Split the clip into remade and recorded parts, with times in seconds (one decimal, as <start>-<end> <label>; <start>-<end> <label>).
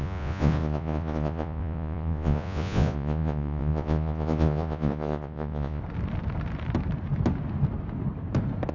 0.0-5.8 remade; 5.8-8.7 recorded